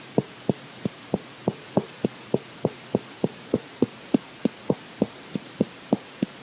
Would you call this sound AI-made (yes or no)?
yes